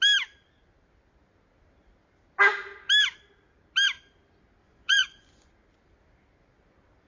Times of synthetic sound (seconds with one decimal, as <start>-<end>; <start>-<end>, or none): 4.6-5.5